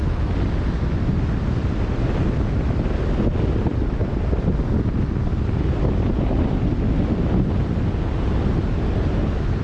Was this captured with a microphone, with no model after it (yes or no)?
yes